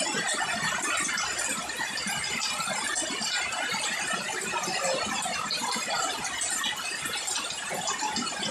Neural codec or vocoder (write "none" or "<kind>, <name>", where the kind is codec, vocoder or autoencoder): none